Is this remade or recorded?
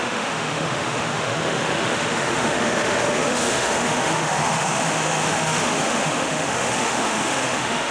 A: remade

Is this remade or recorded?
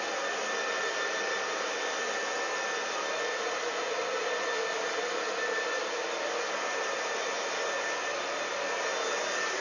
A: recorded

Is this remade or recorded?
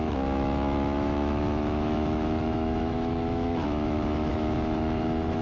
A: remade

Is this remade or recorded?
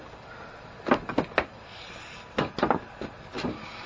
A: recorded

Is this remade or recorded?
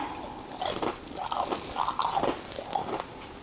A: recorded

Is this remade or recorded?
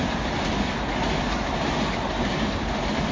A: recorded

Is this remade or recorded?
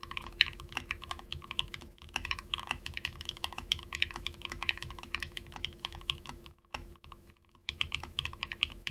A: remade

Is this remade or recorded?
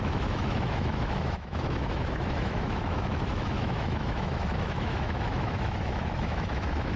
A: remade